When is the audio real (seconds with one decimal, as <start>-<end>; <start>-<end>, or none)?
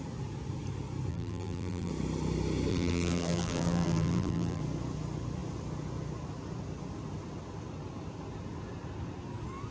0.0-1.1; 1.9-2.7; 4.6-9.7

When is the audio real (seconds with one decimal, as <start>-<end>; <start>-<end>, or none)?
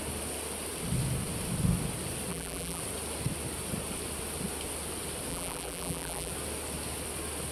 0.0-2.3; 2.8-5.3; 6.3-7.5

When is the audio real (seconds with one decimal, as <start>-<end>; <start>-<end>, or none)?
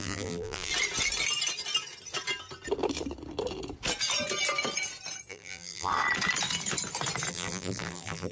0.7-5.3; 5.9-7.3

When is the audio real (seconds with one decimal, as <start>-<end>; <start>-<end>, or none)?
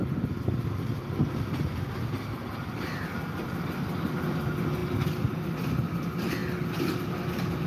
0.0-7.7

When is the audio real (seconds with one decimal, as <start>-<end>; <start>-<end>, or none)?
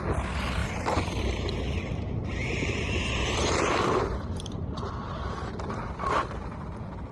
0.0-0.6; 4.9-7.1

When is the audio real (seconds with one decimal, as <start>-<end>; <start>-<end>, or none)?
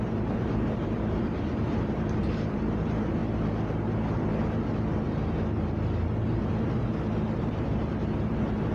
3.2-7.4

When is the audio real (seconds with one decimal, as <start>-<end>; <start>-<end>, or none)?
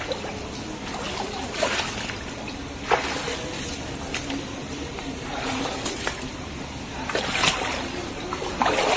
0.0-4.6; 5.9-9.0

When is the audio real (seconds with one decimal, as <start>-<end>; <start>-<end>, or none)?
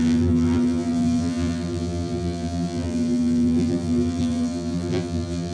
none